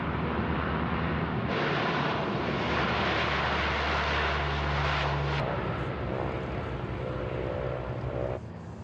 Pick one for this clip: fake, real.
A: real